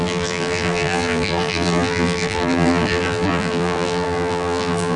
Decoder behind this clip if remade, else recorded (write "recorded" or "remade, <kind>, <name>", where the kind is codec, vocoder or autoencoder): remade, vocoder, BigVGAN v2